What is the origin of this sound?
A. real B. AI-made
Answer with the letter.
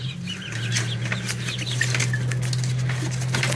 A